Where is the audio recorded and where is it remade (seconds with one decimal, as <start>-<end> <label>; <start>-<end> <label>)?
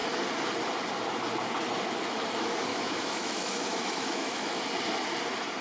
0.0-2.7 recorded; 2.7-4.6 remade; 4.6-5.6 recorded